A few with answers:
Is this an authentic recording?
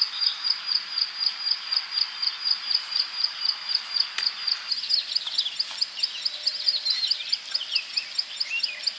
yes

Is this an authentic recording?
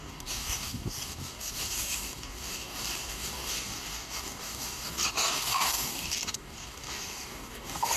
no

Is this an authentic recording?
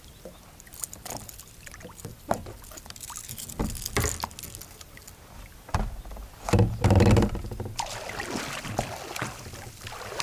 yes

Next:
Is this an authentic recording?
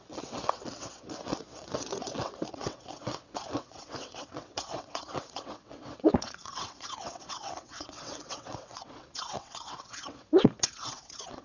no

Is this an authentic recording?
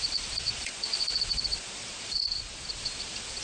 no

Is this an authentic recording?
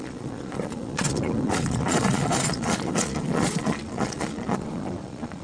no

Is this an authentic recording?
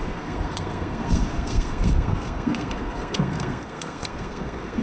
no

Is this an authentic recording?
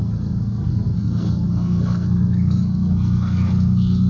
no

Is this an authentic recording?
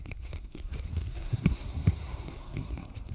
no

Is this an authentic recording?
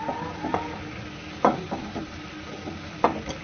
yes